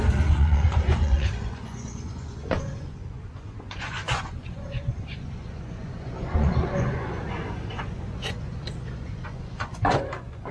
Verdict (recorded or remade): remade